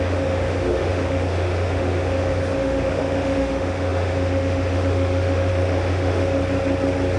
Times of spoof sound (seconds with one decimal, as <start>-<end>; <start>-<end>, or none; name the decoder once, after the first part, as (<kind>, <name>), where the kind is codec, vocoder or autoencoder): 0.0-6.4 (autoencoder, DAC-VAE)